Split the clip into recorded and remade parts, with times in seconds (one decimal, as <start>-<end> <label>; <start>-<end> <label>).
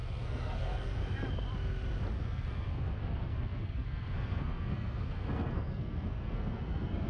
0.0-1.0 remade; 1.0-2.1 recorded; 2.1-7.1 remade